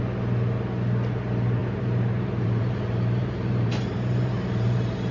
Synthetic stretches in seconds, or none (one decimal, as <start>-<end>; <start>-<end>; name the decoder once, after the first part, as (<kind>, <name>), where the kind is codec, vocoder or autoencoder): 1.6-5.1 (vocoder, BigVGAN v2)